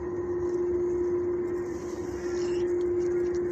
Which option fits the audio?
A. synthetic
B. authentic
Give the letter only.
B